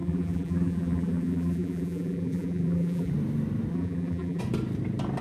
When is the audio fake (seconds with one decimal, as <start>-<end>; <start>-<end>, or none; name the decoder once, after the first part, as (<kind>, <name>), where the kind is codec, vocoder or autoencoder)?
0.0-3.1 (vocoder, BigVGAN v2); 3.7-4.4